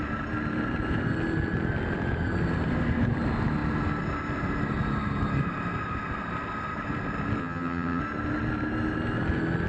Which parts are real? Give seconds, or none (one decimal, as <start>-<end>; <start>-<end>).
0.0-7.4; 8.0-9.7